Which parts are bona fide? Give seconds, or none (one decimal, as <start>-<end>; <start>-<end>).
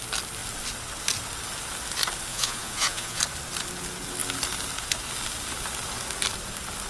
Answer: 0.0-2.3; 3.2-6.9